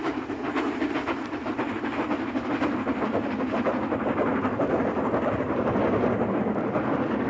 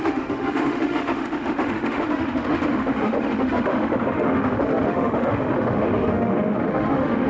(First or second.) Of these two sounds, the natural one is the first